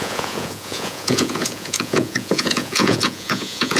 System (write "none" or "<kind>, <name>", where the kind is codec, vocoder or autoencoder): vocoder, Vocos